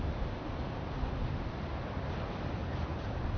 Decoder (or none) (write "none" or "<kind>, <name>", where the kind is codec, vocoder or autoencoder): none